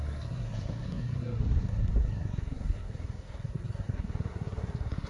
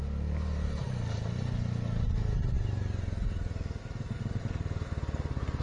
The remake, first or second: first